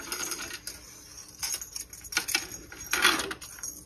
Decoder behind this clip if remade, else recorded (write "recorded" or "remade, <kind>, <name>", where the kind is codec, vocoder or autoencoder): recorded